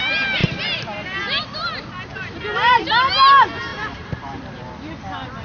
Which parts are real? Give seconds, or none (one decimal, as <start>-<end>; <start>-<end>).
0.0-2.1; 2.9-3.7; 4.5-5.4